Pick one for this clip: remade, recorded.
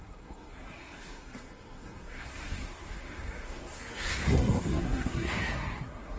remade